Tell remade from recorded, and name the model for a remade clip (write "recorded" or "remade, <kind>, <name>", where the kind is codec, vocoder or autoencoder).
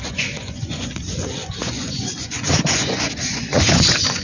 remade, vocoder, Vocos